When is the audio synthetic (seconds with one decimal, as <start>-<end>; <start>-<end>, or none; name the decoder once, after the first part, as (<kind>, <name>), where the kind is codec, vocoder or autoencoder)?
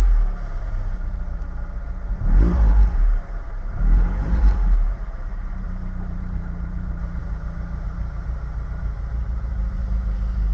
0.0-10.5 (vocoder, BigVGAN v2)